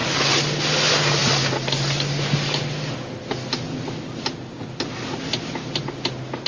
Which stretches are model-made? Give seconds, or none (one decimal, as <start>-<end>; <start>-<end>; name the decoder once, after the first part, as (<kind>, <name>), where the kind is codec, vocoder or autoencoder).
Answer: none